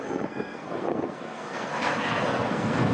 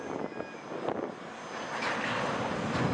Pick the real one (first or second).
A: second